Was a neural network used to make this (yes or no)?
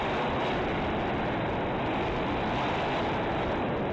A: no